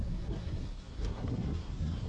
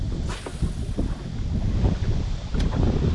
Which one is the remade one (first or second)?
first